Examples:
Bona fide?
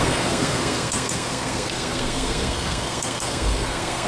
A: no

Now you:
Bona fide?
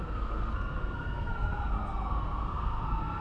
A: no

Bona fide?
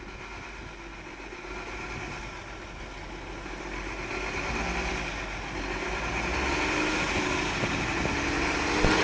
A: yes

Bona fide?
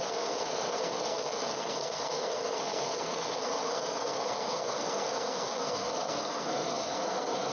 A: no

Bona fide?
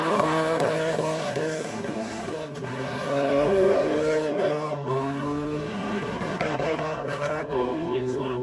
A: no